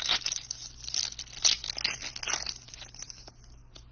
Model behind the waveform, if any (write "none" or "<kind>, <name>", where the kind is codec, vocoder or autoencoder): none